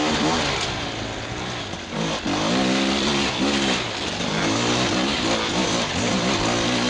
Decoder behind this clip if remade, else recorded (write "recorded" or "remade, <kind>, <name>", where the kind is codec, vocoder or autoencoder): recorded